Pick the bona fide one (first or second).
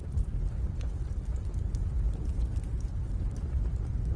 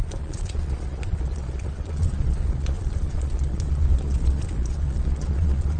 first